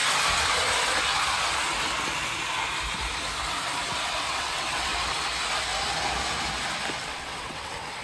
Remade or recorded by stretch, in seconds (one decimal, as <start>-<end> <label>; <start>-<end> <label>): 0.0-4.3 recorded; 4.3-4.9 remade; 4.9-7.0 recorded; 7.0-8.0 remade